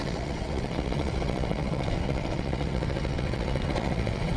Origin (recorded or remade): remade